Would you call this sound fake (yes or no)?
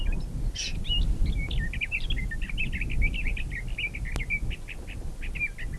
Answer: no